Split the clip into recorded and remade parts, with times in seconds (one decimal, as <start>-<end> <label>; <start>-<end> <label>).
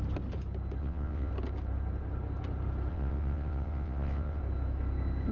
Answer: 0.0-0.8 recorded; 0.8-1.3 remade; 1.3-2.9 recorded; 2.9-4.4 remade; 4.4-5.3 recorded